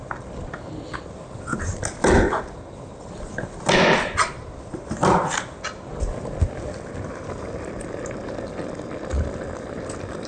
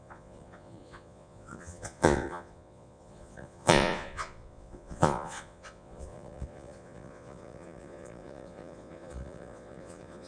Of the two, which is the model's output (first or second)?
second